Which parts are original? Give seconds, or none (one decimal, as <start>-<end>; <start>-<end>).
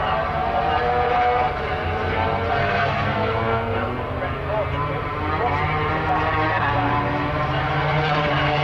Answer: 0.0-2.6; 4.0-8.6